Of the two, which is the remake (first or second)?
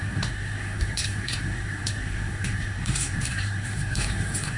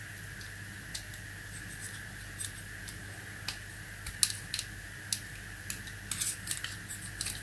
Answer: first